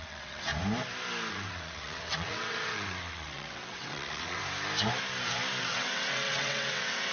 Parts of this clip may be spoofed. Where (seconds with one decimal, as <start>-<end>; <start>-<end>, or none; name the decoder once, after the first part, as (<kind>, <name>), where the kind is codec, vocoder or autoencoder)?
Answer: 0.0-0.5 (vocoder, WaveNeXt); 1.3-4.4; 5.6-7.1